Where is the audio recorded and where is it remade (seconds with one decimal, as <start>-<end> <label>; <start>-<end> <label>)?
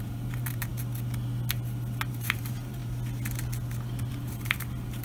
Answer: 0.0-0.7 remade; 0.7-2.1 recorded; 2.1-2.8 remade; 2.8-4.1 recorded; 4.1-5.0 remade